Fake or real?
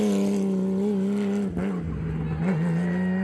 real